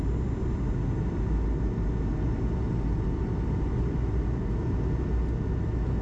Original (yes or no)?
yes